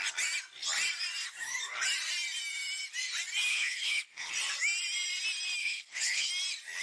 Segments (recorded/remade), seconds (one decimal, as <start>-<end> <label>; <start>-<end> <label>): 0.0-3.5 recorded; 3.5-4.3 remade; 4.3-5.6 recorded; 5.6-6.3 remade; 6.3-6.8 recorded